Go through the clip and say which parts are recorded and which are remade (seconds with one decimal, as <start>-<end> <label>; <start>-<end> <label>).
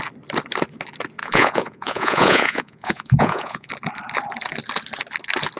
0.0-1.2 recorded; 1.2-3.7 remade; 3.7-5.6 recorded